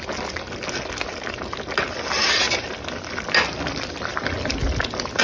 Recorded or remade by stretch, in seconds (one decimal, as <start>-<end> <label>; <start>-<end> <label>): 0.0-5.2 recorded